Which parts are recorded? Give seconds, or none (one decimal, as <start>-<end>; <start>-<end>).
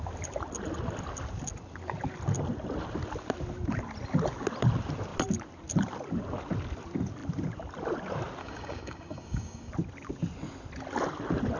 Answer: 0.0-8.4; 9.7-11.6